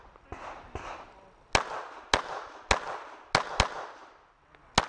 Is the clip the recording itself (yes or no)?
yes